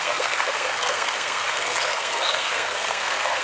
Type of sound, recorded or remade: remade